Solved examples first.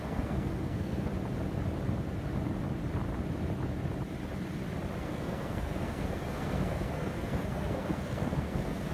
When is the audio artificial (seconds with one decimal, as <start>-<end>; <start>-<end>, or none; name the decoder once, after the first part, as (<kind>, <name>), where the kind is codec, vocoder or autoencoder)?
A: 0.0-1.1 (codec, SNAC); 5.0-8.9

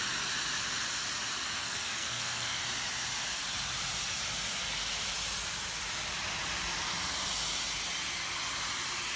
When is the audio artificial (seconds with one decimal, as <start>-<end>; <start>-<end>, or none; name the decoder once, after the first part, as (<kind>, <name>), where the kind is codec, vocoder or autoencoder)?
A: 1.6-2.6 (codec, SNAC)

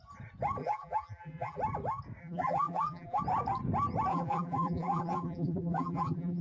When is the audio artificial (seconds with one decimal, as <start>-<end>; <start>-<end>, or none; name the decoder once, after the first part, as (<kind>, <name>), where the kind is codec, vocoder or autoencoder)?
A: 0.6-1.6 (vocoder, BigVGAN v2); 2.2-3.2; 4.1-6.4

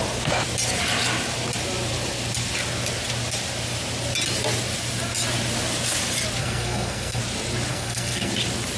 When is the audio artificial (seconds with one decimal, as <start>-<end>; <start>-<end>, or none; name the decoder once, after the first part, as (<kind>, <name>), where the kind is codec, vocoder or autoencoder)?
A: 6.4-7.2 (codec, SNAC); 7.7-8.3

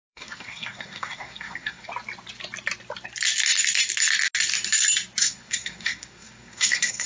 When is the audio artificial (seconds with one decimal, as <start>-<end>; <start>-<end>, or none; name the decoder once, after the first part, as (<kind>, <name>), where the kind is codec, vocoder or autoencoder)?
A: 0.0-1.9 (codec, SNAC); 5.2-7.1

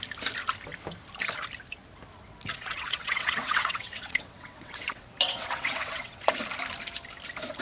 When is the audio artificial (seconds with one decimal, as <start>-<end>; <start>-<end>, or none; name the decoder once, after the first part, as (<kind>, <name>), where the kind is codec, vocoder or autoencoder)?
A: 2.5-6.3 (vocoder, WaveNeXt)